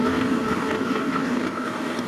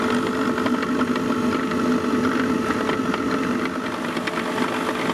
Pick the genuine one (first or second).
second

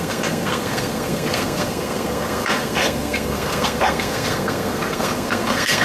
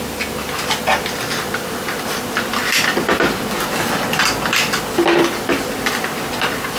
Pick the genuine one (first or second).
second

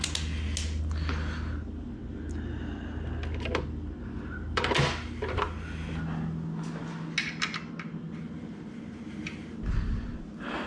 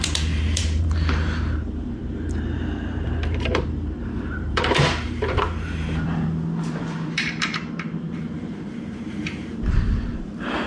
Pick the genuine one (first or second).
first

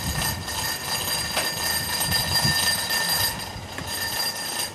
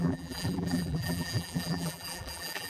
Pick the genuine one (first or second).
first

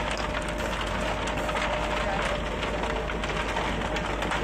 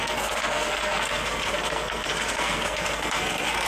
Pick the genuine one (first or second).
first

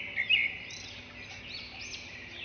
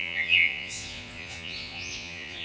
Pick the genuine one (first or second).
first